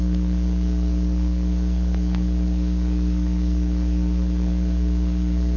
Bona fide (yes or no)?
no